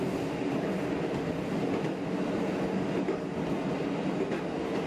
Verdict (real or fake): real